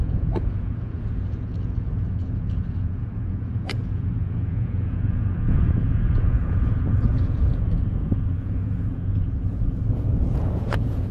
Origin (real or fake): fake